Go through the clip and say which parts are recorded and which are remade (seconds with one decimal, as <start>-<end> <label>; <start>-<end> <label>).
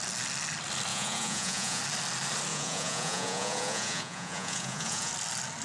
0.0-0.9 recorded; 0.9-1.8 remade; 1.8-2.5 recorded; 2.5-5.1 remade; 5.1-5.6 recorded